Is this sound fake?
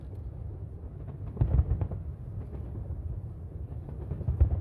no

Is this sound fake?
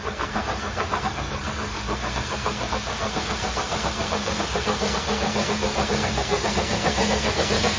yes